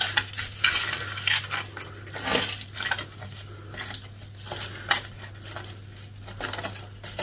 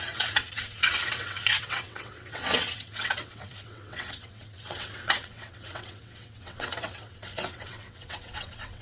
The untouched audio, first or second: first